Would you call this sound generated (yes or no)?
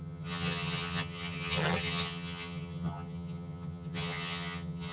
yes